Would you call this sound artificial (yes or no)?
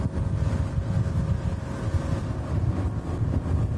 no